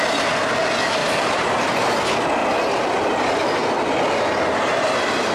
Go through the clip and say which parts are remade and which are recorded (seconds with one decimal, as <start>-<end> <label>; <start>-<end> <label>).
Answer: 0.0-1.0 recorded; 1.0-1.6 remade; 1.6-2.4 recorded; 2.4-3.1 remade; 3.1-5.3 recorded